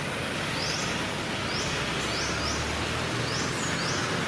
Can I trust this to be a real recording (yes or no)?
yes